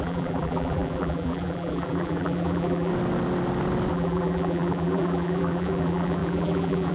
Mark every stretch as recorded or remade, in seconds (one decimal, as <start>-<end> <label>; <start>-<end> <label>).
0.0-2.9 remade; 2.9-3.9 recorded; 3.9-6.9 remade